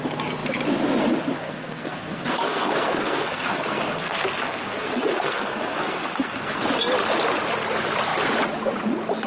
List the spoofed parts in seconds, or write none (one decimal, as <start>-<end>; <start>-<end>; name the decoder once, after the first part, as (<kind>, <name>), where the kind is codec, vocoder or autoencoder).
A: 1.4-6.6 (codec, SNAC)